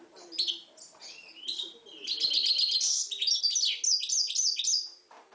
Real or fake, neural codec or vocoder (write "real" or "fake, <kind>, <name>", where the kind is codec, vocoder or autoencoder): real